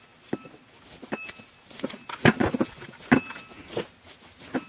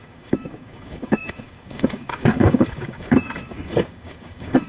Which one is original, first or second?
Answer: first